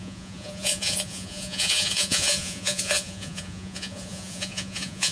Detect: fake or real fake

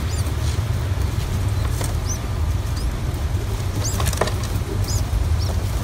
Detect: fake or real real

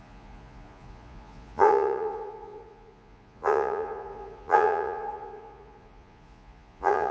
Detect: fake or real fake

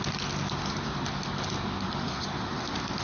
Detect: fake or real real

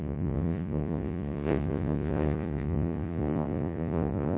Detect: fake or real fake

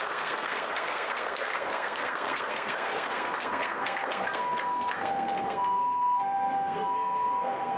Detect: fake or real fake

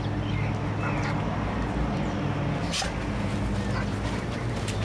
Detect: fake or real real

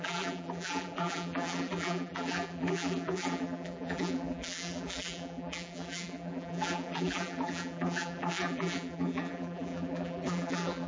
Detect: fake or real fake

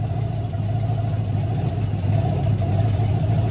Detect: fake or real real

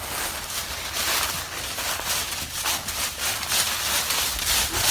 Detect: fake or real real